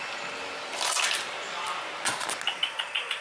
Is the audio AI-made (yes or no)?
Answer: no